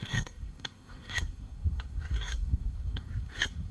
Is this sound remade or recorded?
remade